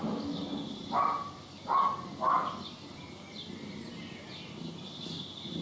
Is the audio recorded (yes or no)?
yes